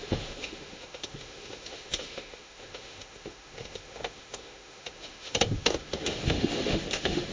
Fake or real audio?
fake